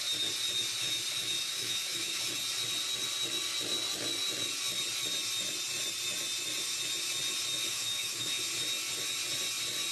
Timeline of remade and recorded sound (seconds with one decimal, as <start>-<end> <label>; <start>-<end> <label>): 0.0-1.4 recorded; 1.4-2.2 remade; 2.2-7.7 recorded; 7.7-8.4 remade; 8.4-9.9 recorded